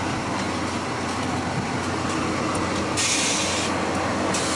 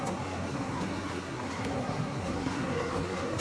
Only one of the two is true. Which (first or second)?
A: first